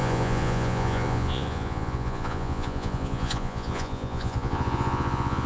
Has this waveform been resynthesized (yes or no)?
yes